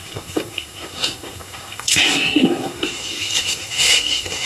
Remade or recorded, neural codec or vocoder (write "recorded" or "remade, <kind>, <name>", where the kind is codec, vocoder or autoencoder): remade, codec, SNAC